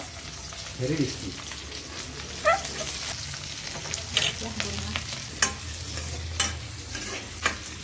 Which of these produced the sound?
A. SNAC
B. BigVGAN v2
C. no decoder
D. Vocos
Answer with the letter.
C